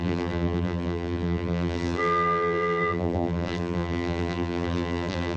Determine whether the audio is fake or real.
fake